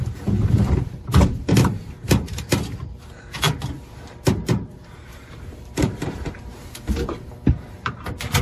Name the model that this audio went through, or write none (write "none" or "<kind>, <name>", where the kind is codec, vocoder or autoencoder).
vocoder, BigVGAN v2